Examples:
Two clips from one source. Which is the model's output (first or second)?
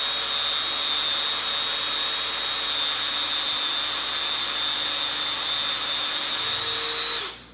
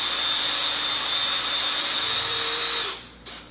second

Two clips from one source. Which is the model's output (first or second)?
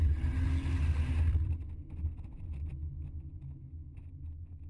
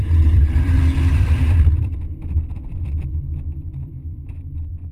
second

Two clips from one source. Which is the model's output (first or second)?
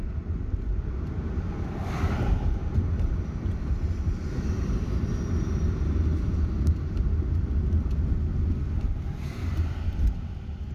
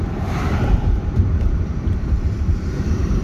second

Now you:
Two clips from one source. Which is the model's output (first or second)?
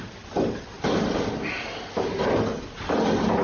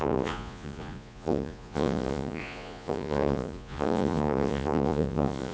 second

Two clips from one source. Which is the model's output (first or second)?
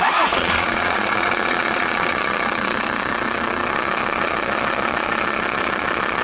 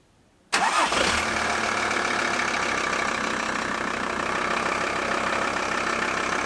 first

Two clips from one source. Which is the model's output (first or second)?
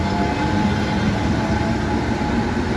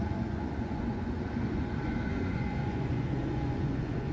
second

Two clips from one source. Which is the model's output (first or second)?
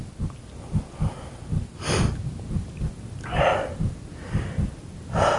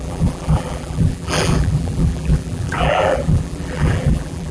second